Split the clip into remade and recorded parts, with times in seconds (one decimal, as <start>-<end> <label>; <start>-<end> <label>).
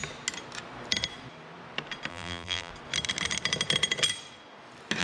0.0-2.1 recorded; 2.1-2.7 remade; 2.7-5.0 recorded